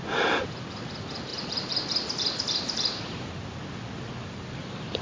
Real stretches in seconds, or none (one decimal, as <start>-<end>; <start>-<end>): 0.0-5.0